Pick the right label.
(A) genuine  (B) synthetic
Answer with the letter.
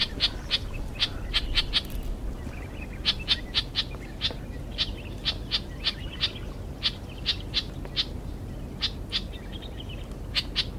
A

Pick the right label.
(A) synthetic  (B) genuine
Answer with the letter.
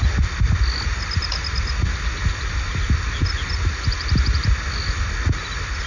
B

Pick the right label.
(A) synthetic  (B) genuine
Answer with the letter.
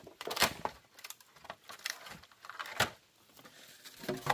B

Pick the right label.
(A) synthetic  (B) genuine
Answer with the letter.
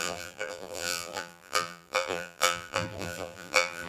A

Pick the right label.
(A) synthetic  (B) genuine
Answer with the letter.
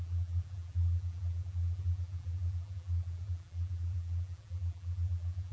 A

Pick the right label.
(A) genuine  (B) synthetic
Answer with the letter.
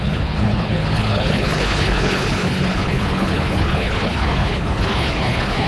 B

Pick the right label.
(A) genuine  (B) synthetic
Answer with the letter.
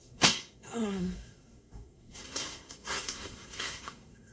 B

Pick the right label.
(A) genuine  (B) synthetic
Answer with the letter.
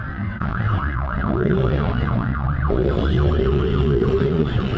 B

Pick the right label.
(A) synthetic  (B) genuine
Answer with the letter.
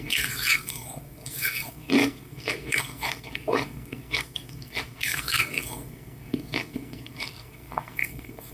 A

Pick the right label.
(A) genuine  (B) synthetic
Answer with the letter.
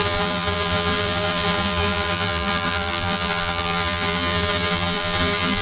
B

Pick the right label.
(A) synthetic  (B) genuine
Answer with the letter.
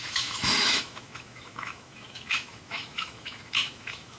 A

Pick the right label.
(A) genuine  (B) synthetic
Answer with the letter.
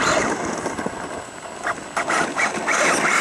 A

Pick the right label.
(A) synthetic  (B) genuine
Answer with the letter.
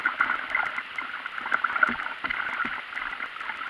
B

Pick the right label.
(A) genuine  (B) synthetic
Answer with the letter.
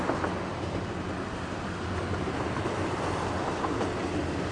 A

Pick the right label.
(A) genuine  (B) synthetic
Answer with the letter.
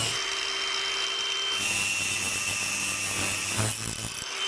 A